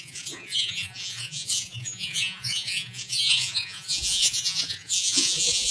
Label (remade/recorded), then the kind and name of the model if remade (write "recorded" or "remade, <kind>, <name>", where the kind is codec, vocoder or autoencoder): remade, vocoder, Vocos